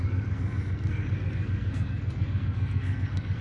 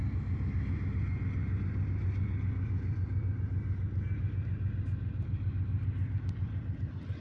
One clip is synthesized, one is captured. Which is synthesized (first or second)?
first